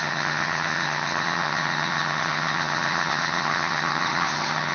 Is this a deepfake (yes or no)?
yes